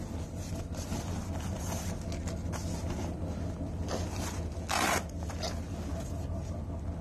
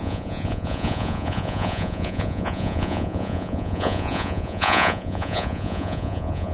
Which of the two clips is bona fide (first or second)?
first